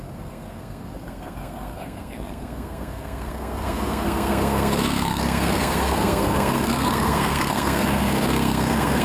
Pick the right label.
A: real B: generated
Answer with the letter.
B